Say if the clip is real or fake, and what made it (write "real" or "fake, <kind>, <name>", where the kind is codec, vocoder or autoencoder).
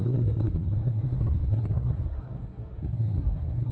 fake, codec, SNAC